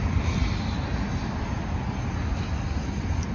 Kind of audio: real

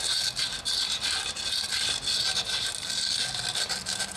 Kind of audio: real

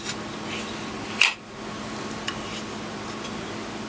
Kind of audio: real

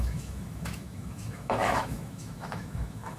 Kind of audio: fake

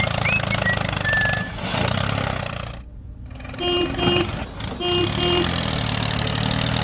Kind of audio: real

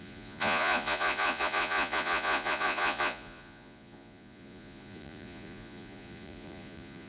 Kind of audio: fake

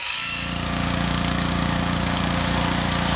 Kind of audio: fake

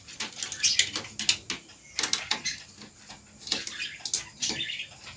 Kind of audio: real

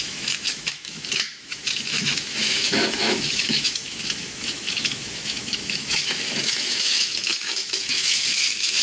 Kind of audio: fake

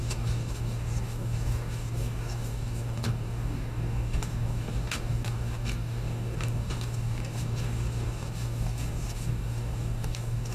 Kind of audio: fake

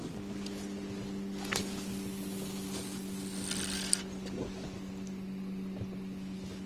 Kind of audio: real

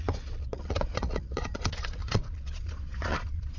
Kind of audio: fake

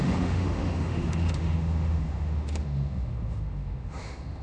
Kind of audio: fake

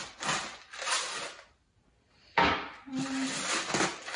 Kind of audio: real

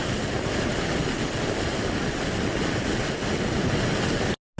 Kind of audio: real